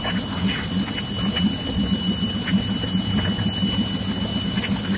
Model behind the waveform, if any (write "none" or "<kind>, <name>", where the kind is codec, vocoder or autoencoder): none